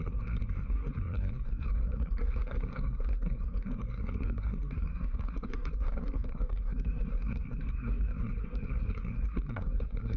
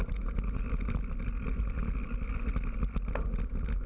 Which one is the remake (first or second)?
first